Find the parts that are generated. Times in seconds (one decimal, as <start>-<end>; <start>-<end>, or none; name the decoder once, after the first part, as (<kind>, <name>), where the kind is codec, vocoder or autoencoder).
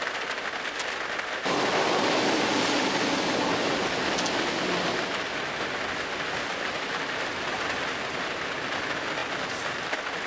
none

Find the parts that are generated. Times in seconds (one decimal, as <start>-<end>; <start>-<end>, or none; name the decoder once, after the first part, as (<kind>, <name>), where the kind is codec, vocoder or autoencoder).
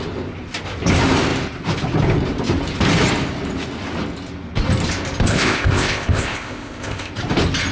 5.3-7.1 (codec, ZipCodec)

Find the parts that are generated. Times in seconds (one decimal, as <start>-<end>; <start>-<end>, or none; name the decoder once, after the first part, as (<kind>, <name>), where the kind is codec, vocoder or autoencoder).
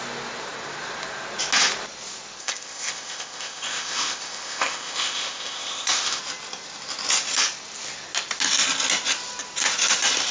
2.4-6.2 (codec, ZipCodec)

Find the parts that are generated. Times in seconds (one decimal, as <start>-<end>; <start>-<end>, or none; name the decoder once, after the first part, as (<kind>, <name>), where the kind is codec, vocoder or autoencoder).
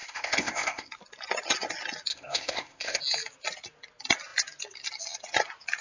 0.0-0.9 (codec, ZipCodec); 2.1-3.0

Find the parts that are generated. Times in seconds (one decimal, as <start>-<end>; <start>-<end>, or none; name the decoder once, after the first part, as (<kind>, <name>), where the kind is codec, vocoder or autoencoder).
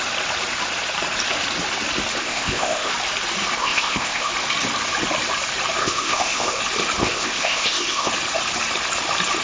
2.2-2.9 (codec, ZipCodec); 3.6-4.3; 5.8-6.6; 7.0-8.1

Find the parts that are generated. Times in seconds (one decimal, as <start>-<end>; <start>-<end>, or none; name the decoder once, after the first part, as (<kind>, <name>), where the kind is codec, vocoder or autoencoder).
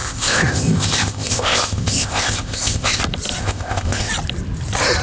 0.0-3.0 (codec, ZipCodec); 3.4-4.1